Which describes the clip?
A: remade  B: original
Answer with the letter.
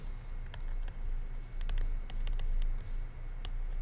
B